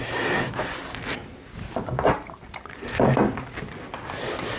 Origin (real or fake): real